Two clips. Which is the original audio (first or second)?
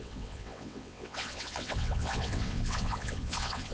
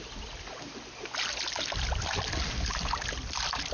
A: second